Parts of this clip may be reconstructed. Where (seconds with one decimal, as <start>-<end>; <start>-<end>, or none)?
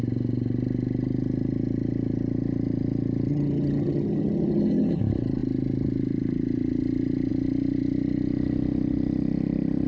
3.3-5.0